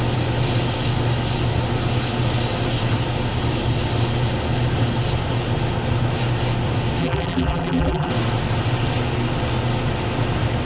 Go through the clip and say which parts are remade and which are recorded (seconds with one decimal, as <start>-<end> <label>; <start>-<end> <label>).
0.0-7.0 recorded; 7.0-8.1 remade; 8.1-10.6 recorded